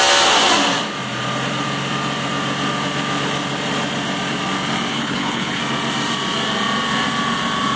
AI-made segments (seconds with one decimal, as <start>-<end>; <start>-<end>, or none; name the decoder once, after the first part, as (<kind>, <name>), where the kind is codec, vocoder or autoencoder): 4.9-5.6 (codec, HILCodec)